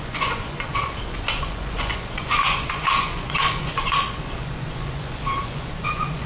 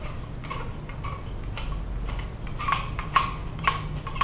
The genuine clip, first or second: second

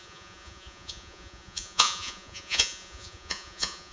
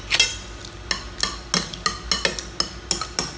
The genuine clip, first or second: second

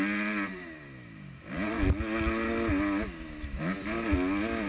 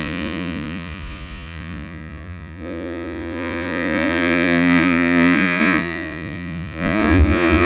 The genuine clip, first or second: first